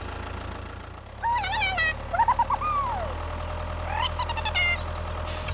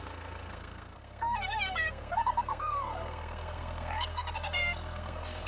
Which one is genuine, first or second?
first